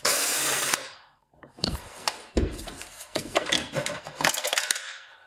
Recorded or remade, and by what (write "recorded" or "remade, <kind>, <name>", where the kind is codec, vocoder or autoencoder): remade, codec, SNAC